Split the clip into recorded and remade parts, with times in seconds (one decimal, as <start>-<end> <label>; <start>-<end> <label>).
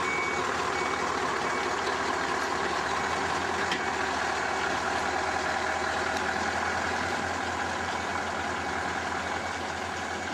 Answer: 0.0-10.3 recorded